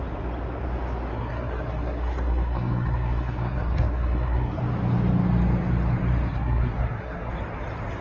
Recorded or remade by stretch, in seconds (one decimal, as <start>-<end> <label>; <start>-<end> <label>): 0.0-1.1 recorded; 1.1-4.6 remade; 4.6-6.3 recorded; 6.3-7.3 remade; 7.3-8.0 recorded